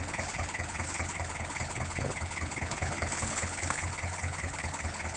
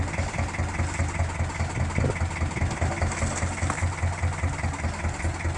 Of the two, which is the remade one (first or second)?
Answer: first